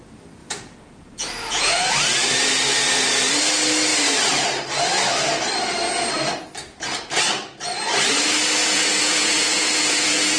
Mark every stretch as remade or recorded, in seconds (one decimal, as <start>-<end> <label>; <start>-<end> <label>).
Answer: 0.0-0.4 recorded; 0.4-1.7 remade; 1.7-8.6 recorded; 8.6-10.4 remade